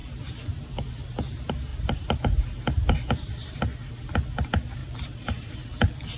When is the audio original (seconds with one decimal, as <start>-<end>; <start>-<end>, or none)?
0.0-1.7; 3.6-4.8; 5.5-6.2